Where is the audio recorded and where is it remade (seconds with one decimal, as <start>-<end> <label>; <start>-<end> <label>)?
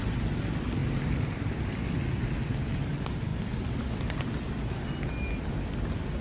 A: 0.0-6.2 recorded